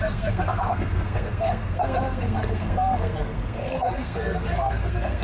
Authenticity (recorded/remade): remade